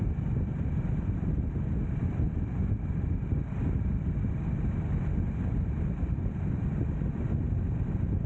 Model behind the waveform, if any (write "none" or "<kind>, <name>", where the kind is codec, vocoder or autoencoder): none